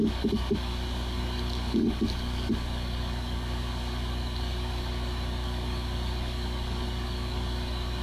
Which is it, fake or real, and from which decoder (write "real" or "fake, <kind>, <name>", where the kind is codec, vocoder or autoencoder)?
fake, codec, DAC